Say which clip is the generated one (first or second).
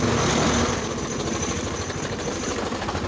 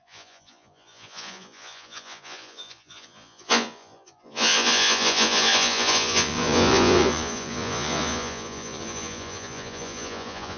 second